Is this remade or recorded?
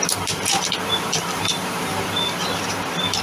recorded